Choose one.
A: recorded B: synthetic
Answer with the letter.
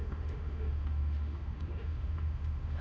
B